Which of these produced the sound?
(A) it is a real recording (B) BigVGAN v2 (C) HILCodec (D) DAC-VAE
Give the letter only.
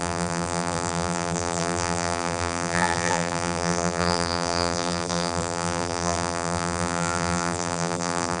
B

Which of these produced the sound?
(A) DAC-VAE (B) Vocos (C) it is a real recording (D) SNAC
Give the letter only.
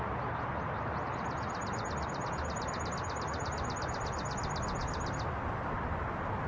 C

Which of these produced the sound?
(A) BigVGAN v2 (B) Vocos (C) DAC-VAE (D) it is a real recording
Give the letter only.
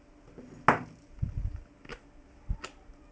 D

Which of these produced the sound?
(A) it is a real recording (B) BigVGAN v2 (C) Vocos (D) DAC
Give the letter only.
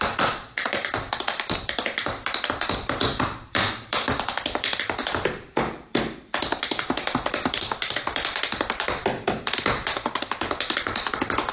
B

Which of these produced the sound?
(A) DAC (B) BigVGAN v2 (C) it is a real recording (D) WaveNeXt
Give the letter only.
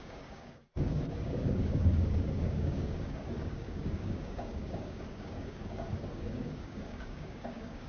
A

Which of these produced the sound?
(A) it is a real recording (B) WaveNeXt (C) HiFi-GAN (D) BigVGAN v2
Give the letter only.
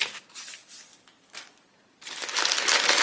A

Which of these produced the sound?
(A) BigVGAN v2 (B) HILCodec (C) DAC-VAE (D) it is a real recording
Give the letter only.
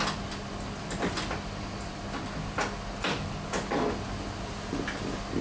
D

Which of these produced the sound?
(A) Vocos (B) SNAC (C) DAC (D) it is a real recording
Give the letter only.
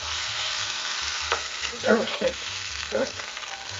B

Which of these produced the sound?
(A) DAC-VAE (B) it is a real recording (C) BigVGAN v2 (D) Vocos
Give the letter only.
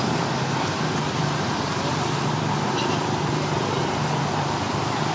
C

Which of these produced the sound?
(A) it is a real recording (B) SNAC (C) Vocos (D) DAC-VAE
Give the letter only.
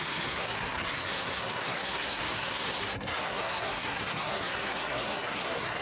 B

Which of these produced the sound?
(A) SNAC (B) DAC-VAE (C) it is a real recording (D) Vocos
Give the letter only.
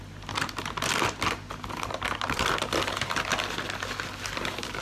C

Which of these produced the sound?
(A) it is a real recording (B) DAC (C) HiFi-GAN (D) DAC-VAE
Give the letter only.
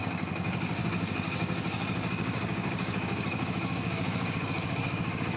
B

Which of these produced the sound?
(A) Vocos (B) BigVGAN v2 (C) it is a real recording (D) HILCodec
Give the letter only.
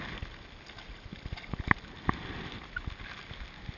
C